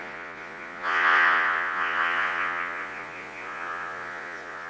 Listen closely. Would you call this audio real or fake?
fake